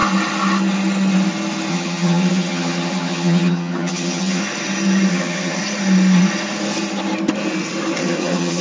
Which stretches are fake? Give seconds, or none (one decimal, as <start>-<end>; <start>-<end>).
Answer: 1.7-4.4; 5.1-5.6; 8.0-8.6